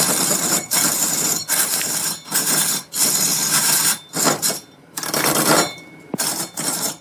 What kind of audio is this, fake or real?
fake